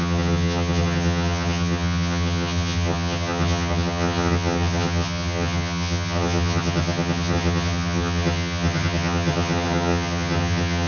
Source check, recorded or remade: remade